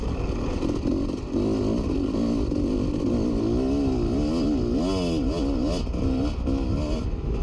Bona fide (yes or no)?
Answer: yes